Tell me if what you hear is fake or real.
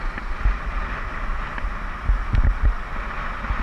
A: real